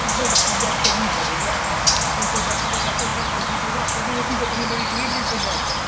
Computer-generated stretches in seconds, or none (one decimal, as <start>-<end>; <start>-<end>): none